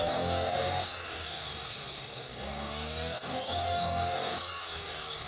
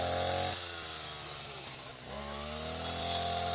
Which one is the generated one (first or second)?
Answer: first